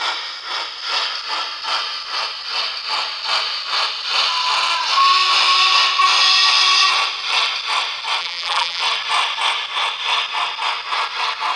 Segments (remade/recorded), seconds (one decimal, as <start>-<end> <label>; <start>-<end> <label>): 0.0-8.2 recorded; 8.2-8.8 remade; 8.8-11.6 recorded